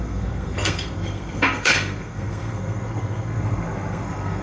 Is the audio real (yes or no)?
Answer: no